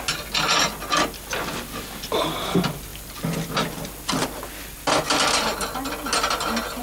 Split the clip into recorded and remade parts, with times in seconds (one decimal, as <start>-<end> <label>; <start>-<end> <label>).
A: 0.0-6.8 recorded